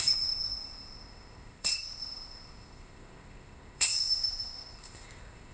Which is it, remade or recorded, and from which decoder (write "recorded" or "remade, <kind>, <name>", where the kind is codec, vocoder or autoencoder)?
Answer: remade, codec, ZipCodec